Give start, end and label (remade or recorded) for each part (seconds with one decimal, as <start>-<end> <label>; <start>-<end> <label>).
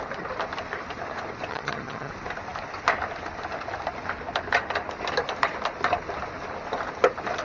0.0-1.5 recorded; 1.5-2.1 remade; 2.1-7.4 recorded